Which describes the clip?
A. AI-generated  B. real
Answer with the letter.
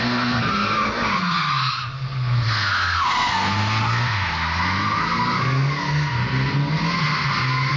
A